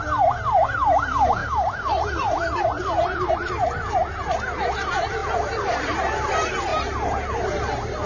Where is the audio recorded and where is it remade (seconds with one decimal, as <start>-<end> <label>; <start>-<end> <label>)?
0.0-1.4 recorded; 1.4-3.3 remade; 3.3-6.7 recorded; 6.7-8.1 remade

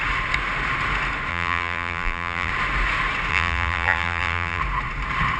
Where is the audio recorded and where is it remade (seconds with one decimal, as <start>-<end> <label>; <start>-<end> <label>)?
0.0-1.3 recorded; 1.3-2.5 remade; 2.5-3.3 recorded; 3.3-4.6 remade; 4.6-5.4 recorded

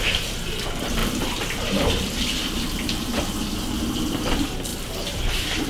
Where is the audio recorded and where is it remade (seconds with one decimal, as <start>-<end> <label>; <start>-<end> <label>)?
0.0-4.7 remade; 4.7-5.7 recorded

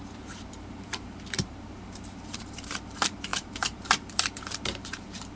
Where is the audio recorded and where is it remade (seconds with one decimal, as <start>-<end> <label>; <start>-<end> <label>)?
0.0-5.4 remade

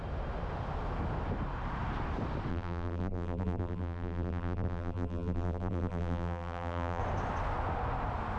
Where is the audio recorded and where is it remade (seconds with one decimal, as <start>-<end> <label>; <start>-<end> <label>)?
0.0-2.5 recorded; 2.5-7.0 remade; 7.0-8.4 recorded

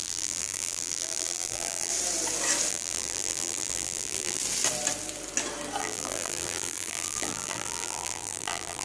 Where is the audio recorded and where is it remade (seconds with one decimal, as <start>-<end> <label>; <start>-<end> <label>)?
0.0-1.9 remade; 1.9-2.7 recorded; 2.7-4.4 remade; 4.4-5.8 recorded; 5.8-8.8 remade